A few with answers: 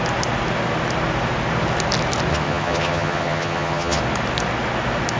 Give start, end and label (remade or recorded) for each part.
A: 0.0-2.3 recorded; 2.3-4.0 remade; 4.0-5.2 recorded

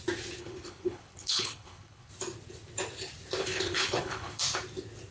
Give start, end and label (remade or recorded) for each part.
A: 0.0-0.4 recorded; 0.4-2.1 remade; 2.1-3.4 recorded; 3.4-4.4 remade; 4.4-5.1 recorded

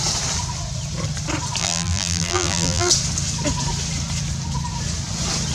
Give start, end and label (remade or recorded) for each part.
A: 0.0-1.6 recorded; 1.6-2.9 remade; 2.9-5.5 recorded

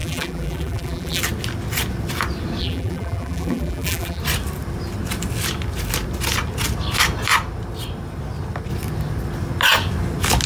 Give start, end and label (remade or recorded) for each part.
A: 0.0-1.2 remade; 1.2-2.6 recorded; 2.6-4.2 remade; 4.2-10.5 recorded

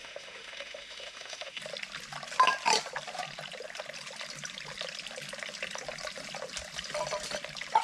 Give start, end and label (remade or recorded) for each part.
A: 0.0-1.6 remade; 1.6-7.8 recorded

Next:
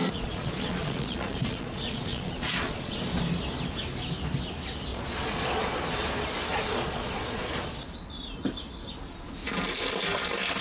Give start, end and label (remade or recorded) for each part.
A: 0.0-3.0 remade; 3.0-4.9 recorded; 4.9-5.8 remade; 5.8-6.5 recorded; 6.5-7.5 remade; 7.5-10.6 recorded